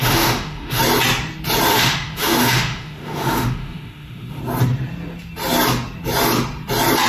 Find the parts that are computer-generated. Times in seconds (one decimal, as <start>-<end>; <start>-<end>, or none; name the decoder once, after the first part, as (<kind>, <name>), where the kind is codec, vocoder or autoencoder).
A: 0.0-0.8 (autoencoder, DAC-VAE); 1.7-4.4